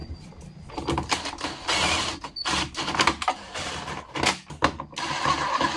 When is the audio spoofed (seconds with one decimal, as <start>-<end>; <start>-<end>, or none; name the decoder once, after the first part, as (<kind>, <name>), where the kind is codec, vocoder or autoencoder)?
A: none

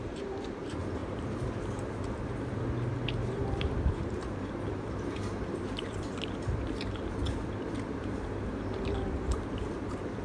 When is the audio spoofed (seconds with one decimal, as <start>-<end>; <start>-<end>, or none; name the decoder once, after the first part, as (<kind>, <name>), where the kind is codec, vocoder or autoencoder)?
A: 0.0-10.2 (vocoder, BigVGAN v2)

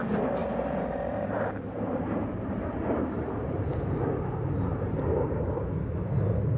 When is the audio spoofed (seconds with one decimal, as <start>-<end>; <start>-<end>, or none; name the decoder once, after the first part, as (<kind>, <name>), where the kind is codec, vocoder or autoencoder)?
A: 0.4-3.8 (vocoder, BigVGAN v2); 4.7-5.7

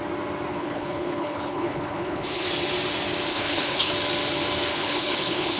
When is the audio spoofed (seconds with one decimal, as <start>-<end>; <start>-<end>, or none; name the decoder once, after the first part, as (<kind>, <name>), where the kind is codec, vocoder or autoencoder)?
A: 0.5-2.5 (codec, HILCodec); 3.3-3.9; 4.7-5.6

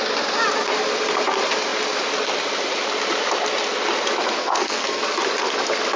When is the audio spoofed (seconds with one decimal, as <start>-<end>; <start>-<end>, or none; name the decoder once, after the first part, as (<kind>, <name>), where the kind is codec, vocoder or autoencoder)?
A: 4.4-5.0 (codec, SNAC)

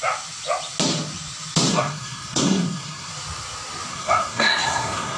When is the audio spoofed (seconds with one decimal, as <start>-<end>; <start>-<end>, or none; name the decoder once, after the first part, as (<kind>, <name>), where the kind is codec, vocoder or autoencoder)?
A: 1.7-3.1 (codec, SNAC); 3.9-5.2

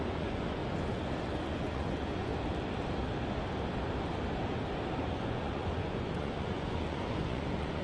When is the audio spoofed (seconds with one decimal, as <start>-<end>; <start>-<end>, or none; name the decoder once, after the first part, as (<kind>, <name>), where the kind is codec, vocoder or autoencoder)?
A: 0.0-0.6 (vocoder, Vocos); 1.3-2.3; 5.1-7.8

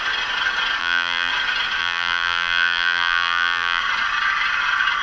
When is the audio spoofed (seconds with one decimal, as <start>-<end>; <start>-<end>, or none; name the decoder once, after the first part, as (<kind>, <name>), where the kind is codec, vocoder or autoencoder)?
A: 0.8-1.3 (vocoder, BigVGAN v2); 1.8-3.8